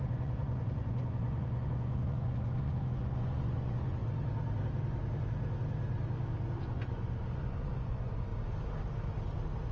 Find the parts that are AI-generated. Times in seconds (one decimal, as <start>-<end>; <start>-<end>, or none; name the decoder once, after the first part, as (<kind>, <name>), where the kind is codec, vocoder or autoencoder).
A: 0.0-4.0 (vocoder, Vocos); 6.6-8.3